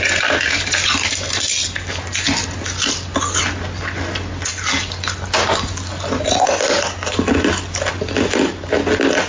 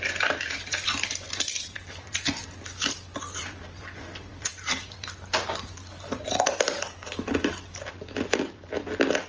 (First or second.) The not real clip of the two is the second